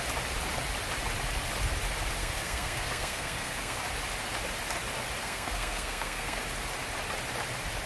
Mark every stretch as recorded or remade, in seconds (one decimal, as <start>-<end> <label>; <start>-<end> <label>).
0.0-2.2 recorded; 2.2-3.8 remade; 3.8-5.2 recorded; 5.2-6.4 remade; 6.4-7.9 recorded